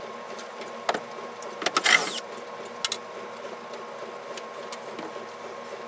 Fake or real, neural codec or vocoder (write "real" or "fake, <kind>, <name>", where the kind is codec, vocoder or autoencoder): real